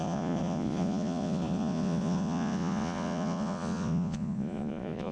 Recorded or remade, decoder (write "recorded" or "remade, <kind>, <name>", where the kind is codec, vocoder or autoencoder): remade, vocoder, Vocos